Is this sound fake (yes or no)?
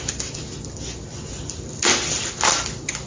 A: no